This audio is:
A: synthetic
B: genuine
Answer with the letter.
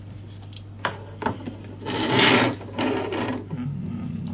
B